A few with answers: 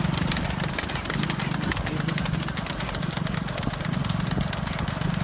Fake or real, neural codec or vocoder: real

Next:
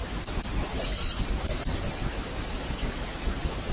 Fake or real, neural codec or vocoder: fake, vocoder, BigVGAN v2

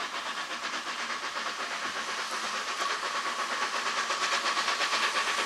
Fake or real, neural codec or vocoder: real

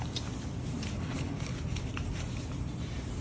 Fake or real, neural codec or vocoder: real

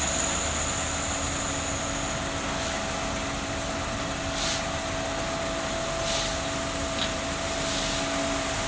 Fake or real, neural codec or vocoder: real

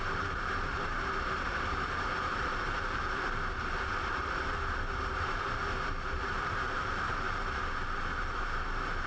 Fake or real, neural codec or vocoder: fake, vocoder, BigVGAN v2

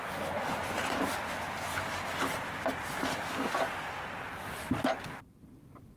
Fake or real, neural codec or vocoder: real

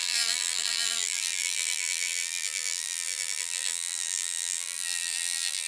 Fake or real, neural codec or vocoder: fake, vocoder, BigVGAN v2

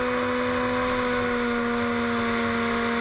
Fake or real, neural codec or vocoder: real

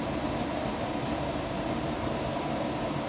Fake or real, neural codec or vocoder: fake, vocoder, BigVGAN v2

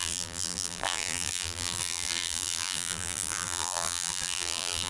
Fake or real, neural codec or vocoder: fake, vocoder, BigVGAN v2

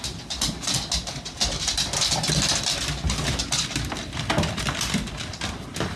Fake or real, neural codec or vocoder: real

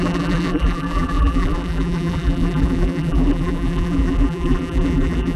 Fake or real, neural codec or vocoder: fake, vocoder, BigVGAN v2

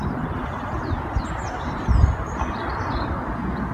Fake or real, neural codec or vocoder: real